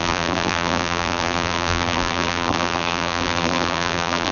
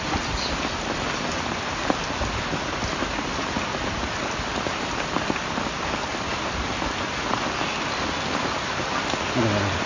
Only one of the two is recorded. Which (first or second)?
second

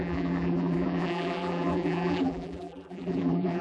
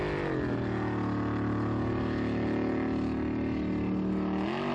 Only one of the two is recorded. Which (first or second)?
second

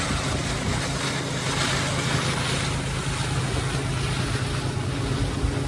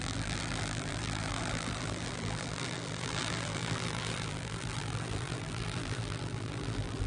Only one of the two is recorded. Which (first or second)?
first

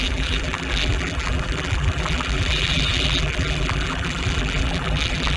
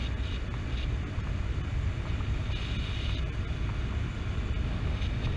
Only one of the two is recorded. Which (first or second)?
second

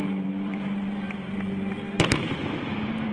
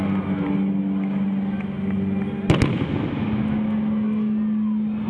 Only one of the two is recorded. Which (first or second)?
second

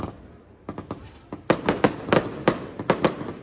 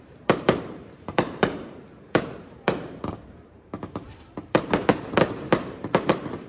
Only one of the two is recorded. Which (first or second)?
first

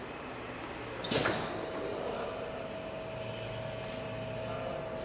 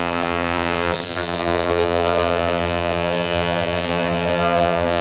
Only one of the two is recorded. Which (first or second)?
first